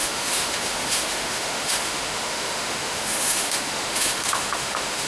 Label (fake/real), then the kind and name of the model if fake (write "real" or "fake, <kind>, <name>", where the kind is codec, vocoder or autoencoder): fake, autoencoder, DAC-VAE